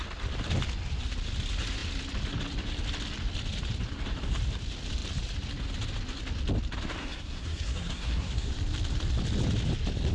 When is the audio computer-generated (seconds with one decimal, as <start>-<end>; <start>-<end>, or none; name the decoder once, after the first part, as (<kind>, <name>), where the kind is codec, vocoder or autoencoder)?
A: 7.0-8.5 (codec, SNAC)